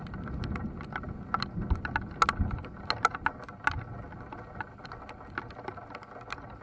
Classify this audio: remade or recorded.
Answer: recorded